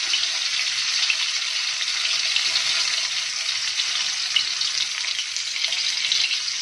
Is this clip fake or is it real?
real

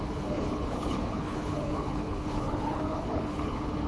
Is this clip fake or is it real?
fake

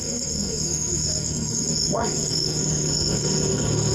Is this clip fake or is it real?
fake